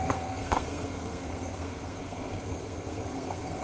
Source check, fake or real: fake